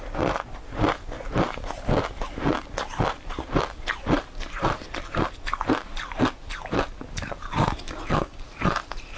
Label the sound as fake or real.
real